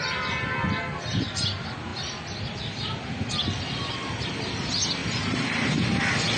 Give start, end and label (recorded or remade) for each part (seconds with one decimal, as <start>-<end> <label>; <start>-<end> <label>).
0.0-6.4 recorded